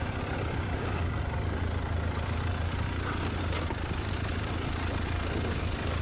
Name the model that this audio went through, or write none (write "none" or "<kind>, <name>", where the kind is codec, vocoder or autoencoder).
none